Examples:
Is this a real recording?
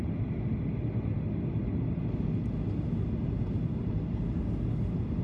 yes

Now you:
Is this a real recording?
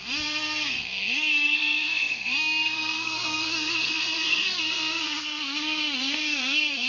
no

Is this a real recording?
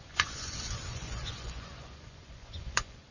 no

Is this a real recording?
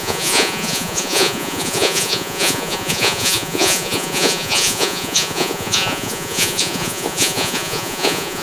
no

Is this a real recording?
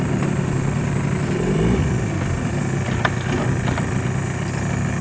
yes